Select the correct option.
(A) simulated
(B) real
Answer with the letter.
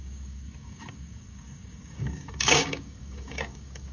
A